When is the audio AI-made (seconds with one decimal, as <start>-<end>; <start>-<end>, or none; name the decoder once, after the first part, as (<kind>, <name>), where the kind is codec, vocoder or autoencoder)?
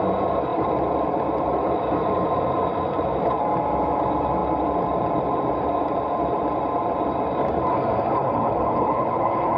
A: 8.2-9.6 (codec, HILCodec)